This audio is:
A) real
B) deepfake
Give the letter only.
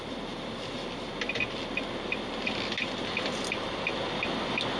A